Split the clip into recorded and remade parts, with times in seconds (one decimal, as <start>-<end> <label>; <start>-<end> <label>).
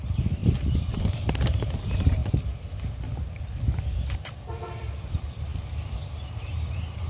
0.0-2.2 remade; 2.2-3.4 recorded; 3.4-5.5 remade; 5.5-6.2 recorded; 6.2-7.1 remade